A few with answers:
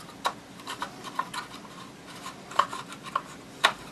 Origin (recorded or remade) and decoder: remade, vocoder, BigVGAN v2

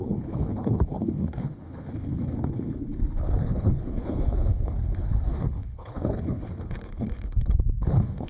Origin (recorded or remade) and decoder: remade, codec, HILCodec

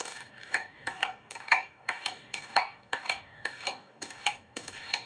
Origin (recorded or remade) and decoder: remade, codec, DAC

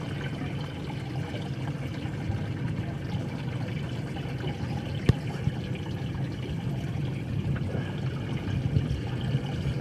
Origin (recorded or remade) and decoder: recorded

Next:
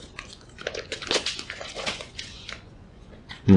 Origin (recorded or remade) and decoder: remade, vocoder, Vocos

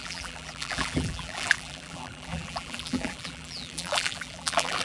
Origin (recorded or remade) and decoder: remade, vocoder, BigVGAN v2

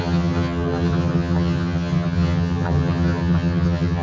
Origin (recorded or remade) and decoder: remade, vocoder, HiFi-GAN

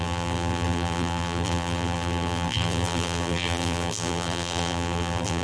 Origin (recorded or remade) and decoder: remade, vocoder, BigVGAN v2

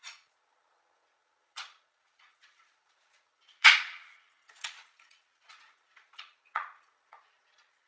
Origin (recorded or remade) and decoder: remade, vocoder, Vocos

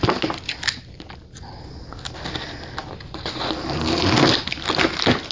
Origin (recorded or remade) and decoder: recorded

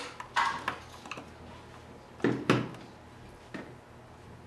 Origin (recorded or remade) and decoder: recorded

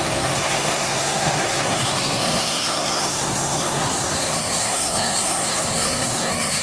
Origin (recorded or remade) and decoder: remade, codec, SNAC